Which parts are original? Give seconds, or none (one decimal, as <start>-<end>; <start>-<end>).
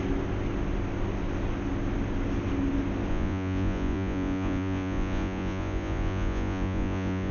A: 0.0-3.1